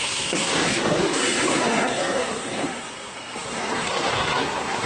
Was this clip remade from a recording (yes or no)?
yes